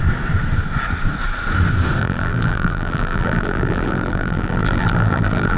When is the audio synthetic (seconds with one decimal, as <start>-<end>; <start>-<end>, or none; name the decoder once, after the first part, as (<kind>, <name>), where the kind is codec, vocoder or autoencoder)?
2.0-5.6 (vocoder, BigVGAN v2)